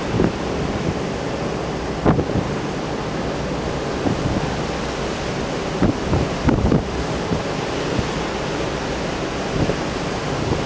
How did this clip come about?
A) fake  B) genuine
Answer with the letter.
B